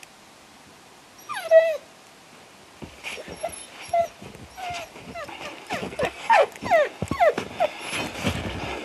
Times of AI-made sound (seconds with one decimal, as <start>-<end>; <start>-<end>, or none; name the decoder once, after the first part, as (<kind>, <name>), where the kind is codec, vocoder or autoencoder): 5.8-6.5 (codec, SNAC)